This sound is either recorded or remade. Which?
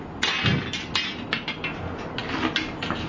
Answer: recorded